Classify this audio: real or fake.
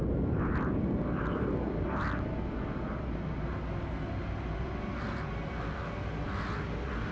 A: real